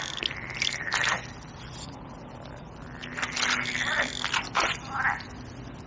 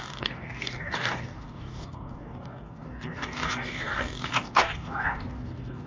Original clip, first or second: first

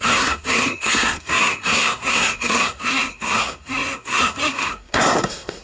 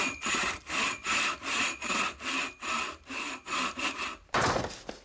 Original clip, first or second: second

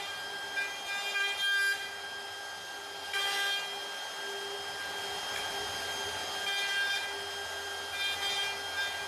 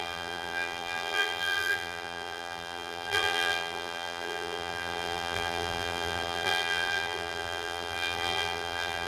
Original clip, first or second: first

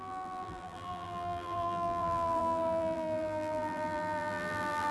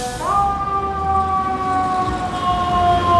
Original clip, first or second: second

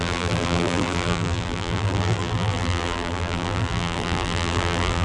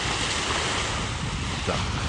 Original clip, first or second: second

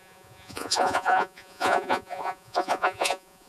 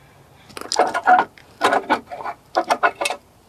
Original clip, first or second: second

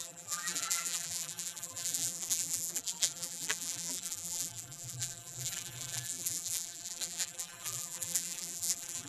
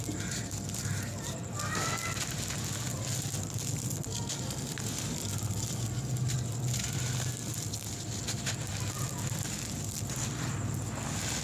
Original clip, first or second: second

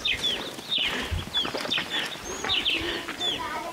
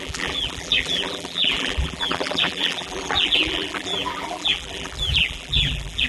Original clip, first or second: first